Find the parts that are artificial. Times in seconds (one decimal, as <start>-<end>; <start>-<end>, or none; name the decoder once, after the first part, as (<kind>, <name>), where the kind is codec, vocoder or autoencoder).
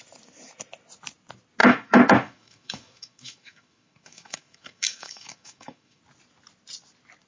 1.6-6.0 (autoencoder, DAC-VAE)